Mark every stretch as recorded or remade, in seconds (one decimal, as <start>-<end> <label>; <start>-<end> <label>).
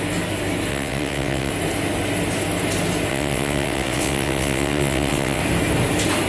0.0-0.7 recorded; 0.7-1.5 remade; 1.5-3.1 recorded; 3.1-5.4 remade; 5.4-6.3 recorded